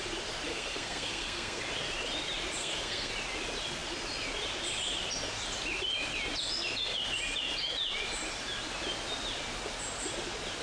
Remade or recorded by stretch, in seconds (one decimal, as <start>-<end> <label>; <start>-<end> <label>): 0.0-0.5 recorded; 0.5-1.6 remade; 1.6-2.6 recorded; 2.6-3.1 remade; 3.1-10.6 recorded